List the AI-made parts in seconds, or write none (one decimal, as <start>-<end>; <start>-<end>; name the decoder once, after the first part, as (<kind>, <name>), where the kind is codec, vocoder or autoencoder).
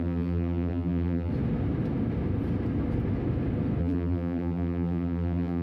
0.0-1.3 (vocoder, BigVGAN v2); 3.8-5.6